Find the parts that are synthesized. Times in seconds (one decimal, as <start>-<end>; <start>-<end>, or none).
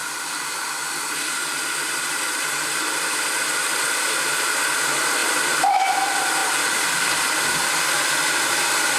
2.3-9.0